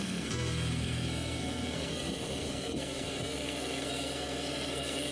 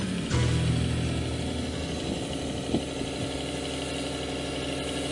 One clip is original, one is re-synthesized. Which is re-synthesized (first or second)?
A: first